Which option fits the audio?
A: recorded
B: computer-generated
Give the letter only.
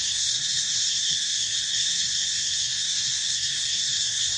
B